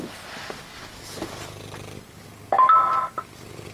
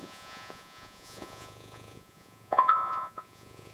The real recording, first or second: first